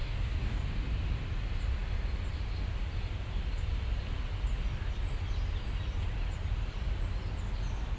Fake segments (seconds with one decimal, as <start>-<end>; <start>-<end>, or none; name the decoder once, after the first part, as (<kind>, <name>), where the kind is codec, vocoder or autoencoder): 0.0-0.6 (codec, DAC)